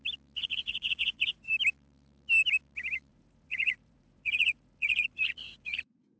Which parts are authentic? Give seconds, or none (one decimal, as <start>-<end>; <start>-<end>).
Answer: 0.0-0.4; 1.5-3.1